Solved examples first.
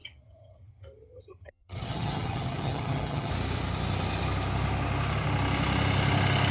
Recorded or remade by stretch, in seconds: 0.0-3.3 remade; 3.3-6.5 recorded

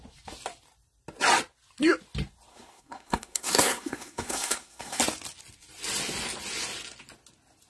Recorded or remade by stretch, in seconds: 0.0-2.5 recorded; 2.5-5.0 remade; 5.0-7.7 recorded

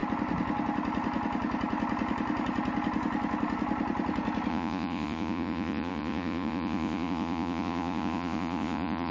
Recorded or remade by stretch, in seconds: 0.0-4.5 recorded; 4.5-9.1 remade

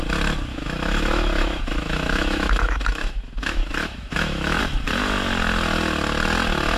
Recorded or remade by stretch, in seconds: 0.0-0.5 recorded; 0.5-4.6 remade; 4.6-6.8 recorded